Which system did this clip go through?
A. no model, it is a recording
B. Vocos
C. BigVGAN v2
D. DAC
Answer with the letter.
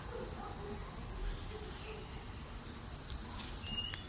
A